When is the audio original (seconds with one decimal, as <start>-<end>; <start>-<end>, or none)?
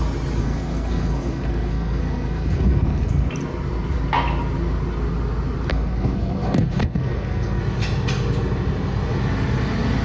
0.0-0.4; 3.3-5.7; 7.6-10.0